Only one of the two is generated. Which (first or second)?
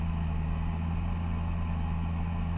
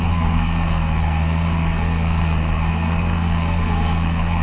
second